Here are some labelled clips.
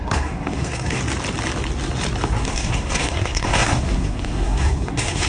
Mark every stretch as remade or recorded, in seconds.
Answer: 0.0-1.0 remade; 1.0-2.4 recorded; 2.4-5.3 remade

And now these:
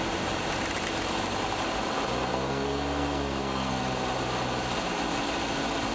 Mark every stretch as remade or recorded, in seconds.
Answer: 0.0-2.3 recorded; 2.3-3.8 remade; 3.8-5.9 recorded